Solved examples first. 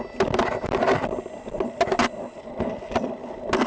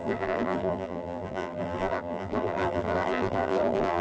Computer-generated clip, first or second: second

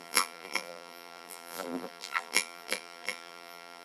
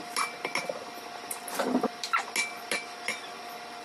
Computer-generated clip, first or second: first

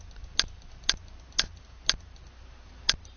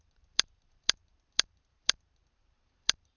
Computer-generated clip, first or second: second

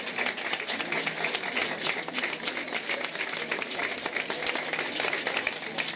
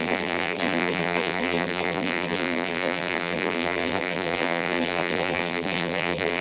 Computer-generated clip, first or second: second